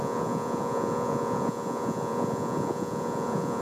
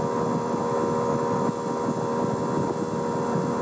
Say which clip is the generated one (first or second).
first